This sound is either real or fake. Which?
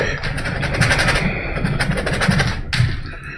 real